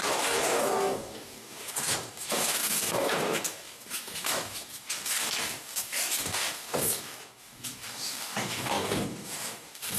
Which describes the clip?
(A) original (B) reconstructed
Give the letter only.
B